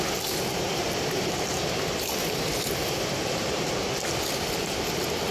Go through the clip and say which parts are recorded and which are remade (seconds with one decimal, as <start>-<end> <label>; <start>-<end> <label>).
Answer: 0.0-0.5 recorded; 0.5-3.7 remade; 3.7-5.3 recorded